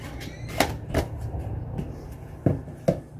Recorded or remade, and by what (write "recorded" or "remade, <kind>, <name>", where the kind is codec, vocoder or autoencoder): recorded